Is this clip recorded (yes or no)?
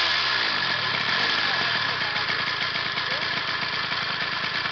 yes